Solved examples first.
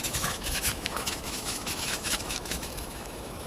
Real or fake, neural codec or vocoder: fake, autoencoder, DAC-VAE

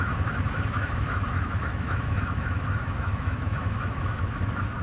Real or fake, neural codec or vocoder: fake, autoencoder, DAC-VAE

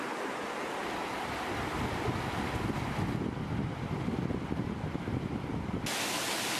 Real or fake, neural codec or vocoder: real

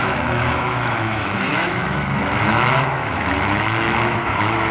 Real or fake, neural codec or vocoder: fake, autoencoder, DAC-VAE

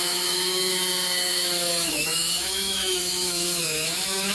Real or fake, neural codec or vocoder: fake, autoencoder, DAC-VAE